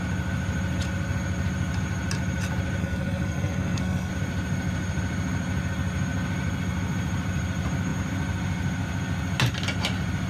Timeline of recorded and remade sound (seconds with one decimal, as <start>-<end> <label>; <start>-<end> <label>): 0.0-2.8 recorded; 2.8-4.1 remade; 4.1-10.3 recorded